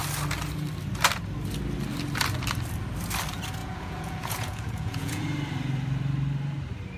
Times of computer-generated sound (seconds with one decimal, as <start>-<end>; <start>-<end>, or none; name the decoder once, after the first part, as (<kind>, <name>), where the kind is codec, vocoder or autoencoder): 3.6-5.2 (vocoder, Vocos)